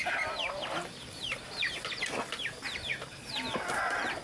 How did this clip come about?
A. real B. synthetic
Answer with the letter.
A